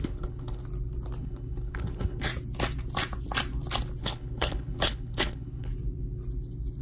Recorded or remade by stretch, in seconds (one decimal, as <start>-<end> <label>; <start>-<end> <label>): 0.0-0.6 remade; 0.6-1.2 recorded; 1.2-2.3 remade; 2.3-4.0 recorded; 4.0-5.7 remade; 5.7-6.8 recorded